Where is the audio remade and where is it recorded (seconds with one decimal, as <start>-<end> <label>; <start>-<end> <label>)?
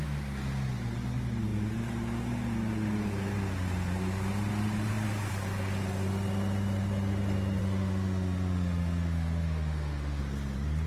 0.0-7.6 recorded; 7.6-10.2 remade; 10.2-10.9 recorded